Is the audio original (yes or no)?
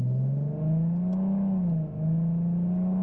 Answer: yes